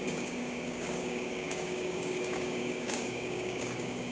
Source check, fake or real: fake